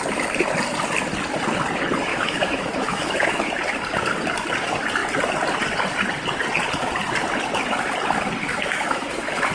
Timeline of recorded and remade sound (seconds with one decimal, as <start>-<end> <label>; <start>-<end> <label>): 0.0-2.1 recorded; 2.1-3.5 remade; 3.5-8.5 recorded; 8.5-9.5 remade